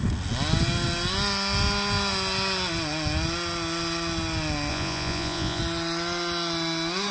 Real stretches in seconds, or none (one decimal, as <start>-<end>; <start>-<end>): 0.0-4.7; 5.6-7.1